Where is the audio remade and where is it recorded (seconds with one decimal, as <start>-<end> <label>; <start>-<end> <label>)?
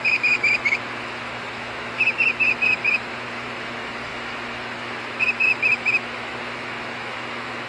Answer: 0.0-7.7 remade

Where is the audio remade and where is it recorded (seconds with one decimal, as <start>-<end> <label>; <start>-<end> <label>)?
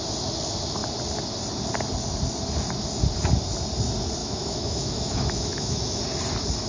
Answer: 0.0-4.2 recorded; 4.2-6.0 remade; 6.0-6.7 recorded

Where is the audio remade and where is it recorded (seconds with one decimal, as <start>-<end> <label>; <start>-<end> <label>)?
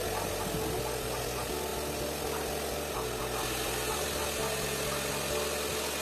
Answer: 0.0-6.0 recorded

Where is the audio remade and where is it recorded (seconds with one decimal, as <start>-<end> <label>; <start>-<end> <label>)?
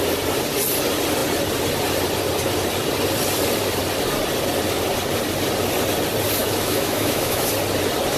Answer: 0.0-6.4 recorded; 6.4-7.5 remade; 7.5-8.2 recorded